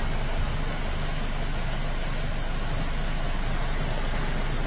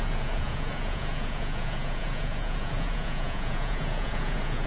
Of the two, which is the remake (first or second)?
second